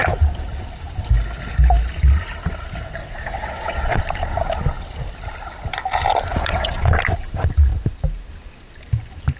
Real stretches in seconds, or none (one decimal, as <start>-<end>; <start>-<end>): 0.0-3.0; 4.0-6.3; 6.9-9.4